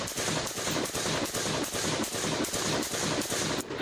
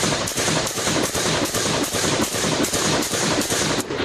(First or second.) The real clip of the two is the first